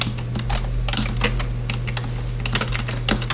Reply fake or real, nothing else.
real